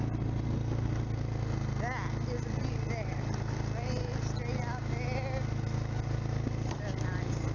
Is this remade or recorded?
recorded